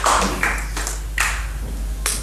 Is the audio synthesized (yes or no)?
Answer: no